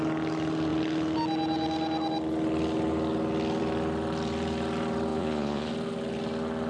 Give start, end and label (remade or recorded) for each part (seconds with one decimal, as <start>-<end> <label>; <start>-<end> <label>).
0.0-5.1 recorded; 5.1-5.7 remade; 5.7-6.7 recorded